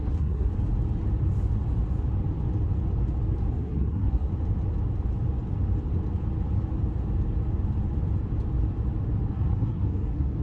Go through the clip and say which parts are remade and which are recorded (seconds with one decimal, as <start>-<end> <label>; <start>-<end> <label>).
0.0-0.5 remade; 0.5-3.5 recorded; 3.5-4.3 remade; 4.3-9.3 recorded; 9.3-10.4 remade